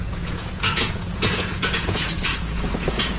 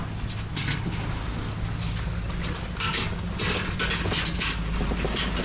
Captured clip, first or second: second